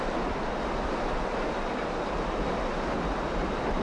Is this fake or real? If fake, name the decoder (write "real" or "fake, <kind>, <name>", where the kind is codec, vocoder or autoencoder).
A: real